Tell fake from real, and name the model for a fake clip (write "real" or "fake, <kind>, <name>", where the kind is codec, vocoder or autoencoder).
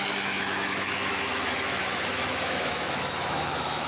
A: fake, autoencoder, DAC-VAE